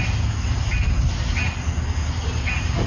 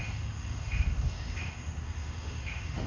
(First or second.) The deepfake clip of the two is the second